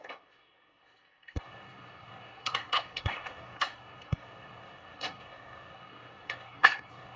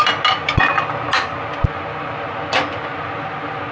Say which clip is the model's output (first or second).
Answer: first